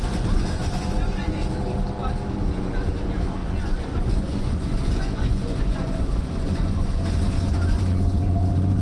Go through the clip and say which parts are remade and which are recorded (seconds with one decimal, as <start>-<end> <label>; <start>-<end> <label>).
0.0-1.4 remade; 1.4-2.4 recorded; 2.4-8.8 remade